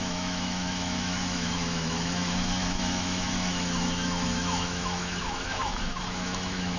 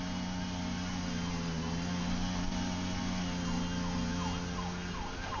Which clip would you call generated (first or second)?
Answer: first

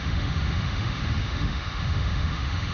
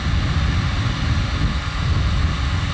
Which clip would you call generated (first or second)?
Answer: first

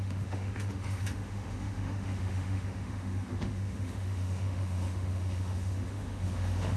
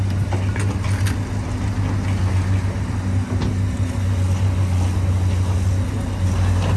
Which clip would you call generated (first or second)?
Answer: first